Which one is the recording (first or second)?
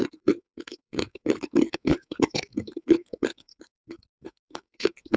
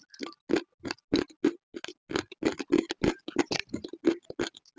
second